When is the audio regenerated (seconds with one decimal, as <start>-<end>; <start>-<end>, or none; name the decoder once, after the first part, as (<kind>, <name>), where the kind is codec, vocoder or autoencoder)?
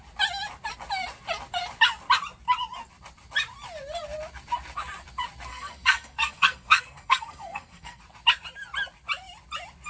5.5-8.0 (codec, SNAC)